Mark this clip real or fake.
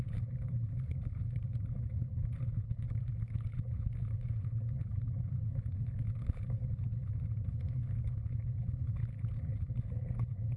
fake